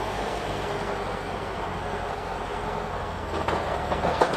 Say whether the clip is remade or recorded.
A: remade